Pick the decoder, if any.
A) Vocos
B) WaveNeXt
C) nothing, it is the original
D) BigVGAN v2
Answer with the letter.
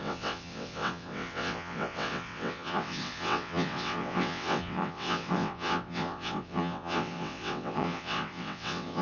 B